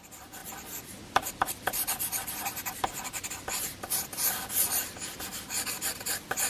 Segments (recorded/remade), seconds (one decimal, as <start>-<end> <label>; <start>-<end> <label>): 0.0-0.4 recorded; 0.4-1.9 remade; 1.9-6.5 recorded